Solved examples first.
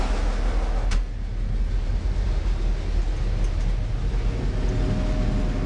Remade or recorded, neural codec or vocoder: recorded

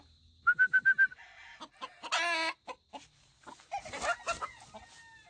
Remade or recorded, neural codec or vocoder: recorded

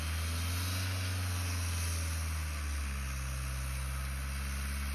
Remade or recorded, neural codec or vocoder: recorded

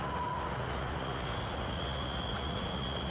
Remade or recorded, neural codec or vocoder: remade, vocoder, Vocos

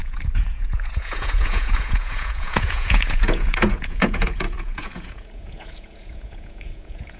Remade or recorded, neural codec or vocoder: remade, vocoder, Vocos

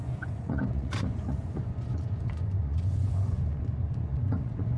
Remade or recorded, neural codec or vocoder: remade, vocoder, Vocos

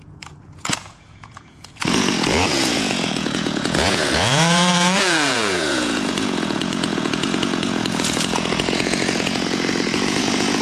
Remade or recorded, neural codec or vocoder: remade, vocoder, Vocos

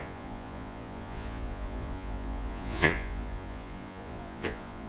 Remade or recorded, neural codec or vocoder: remade, vocoder, Vocos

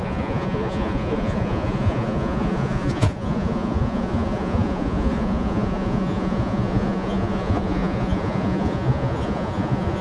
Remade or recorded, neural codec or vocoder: remade, vocoder, Vocos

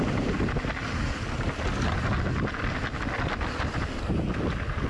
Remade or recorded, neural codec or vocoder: recorded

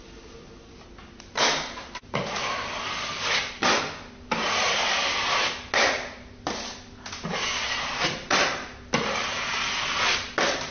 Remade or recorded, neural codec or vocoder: recorded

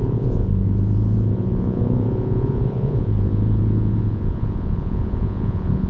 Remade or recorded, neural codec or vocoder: remade, vocoder, Vocos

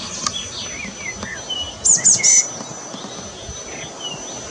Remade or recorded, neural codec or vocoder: recorded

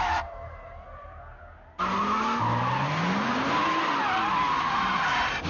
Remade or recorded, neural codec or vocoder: recorded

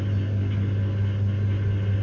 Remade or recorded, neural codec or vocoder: recorded